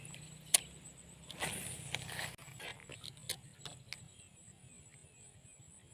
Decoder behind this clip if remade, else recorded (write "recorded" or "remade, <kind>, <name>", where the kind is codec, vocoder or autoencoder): recorded